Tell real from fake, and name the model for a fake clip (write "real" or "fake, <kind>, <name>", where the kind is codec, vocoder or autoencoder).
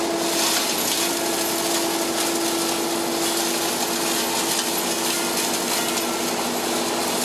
real